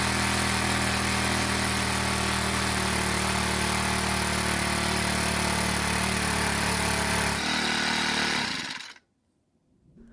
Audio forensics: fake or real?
real